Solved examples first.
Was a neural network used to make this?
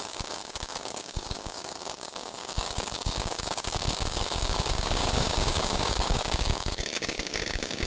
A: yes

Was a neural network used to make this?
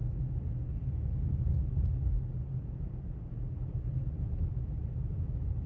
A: yes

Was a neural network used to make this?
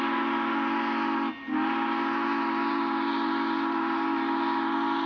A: no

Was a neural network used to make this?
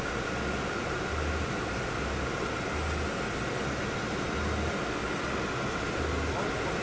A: no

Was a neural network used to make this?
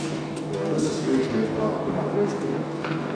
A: yes